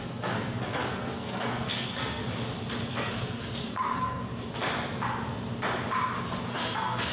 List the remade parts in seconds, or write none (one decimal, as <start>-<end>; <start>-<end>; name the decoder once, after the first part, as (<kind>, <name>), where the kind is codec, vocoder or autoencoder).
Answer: 0.0-2.2 (codec, SNAC); 2.9-4.3; 6.5-7.1